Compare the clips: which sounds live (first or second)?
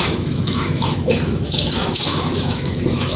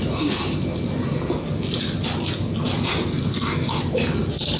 second